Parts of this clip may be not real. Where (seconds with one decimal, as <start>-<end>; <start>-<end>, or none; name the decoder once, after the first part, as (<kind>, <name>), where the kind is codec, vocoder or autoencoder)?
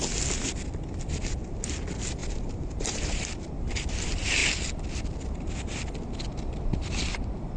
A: 2.2-3.9 (vocoder, BigVGAN v2)